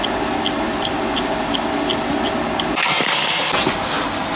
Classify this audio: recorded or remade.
recorded